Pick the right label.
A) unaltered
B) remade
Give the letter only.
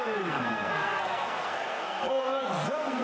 B